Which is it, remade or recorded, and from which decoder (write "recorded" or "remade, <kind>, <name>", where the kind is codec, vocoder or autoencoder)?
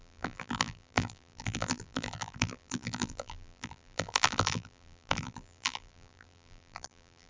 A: remade, vocoder, BigVGAN v2